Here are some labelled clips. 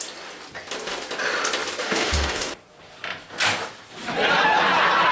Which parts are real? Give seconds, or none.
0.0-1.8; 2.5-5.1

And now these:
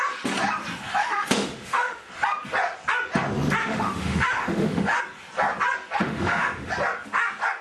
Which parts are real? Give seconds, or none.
0.0-1.0; 2.1-3.6; 5.0-6.0; 6.7-7.6

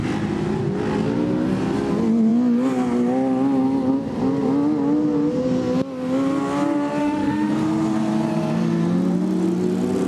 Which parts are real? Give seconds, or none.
0.0-7.0; 7.5-10.1

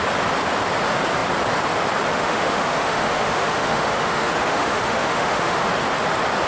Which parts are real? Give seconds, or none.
0.0-2.1; 5.7-6.5

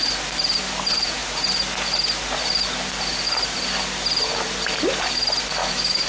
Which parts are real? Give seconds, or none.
0.0-5.6

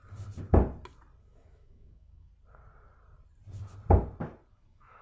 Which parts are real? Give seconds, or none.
0.0-1.2; 2.3-4.5